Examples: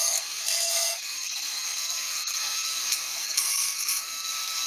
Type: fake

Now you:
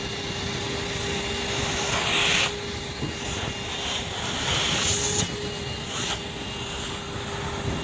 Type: real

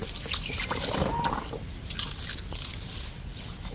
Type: real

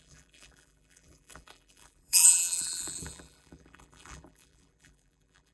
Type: fake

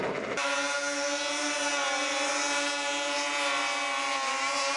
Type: real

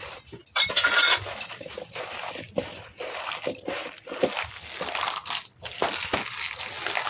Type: real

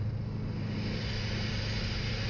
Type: real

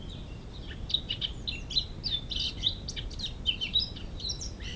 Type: real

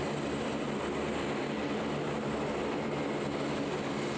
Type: real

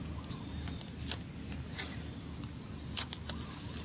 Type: real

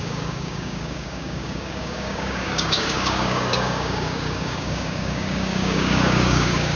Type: fake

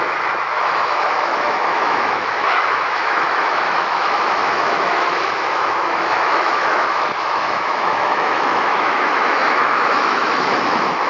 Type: fake